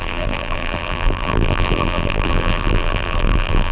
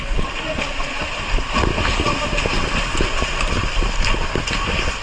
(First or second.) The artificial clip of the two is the first